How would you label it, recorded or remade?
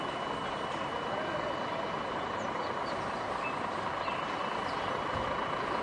recorded